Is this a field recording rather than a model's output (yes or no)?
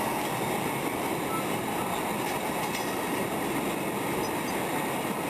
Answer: yes